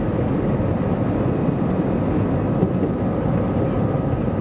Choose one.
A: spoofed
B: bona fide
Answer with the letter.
B